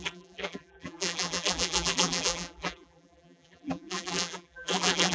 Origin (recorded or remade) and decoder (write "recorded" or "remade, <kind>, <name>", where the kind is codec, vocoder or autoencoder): remade, vocoder, BigVGAN v2